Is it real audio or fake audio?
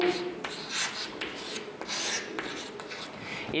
real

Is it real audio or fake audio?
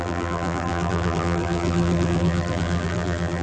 fake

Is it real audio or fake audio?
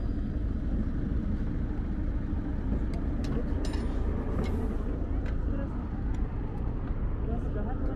real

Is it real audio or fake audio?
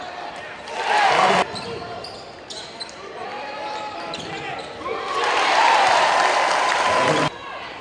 fake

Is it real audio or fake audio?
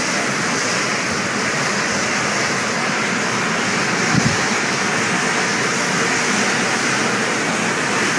real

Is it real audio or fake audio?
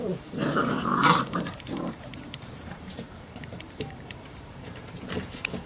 fake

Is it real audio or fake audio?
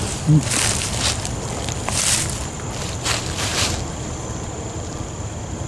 fake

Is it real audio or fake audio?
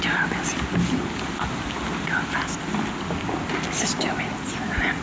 real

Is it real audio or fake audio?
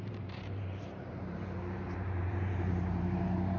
fake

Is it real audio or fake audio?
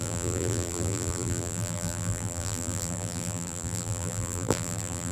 fake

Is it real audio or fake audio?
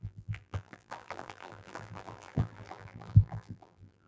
fake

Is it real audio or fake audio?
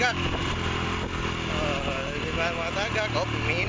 real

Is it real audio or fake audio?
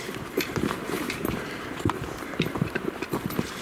fake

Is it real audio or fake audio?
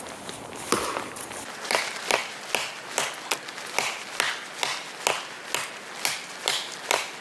real